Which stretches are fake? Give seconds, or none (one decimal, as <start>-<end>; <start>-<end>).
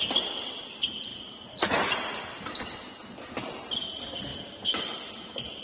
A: 1.1-2.2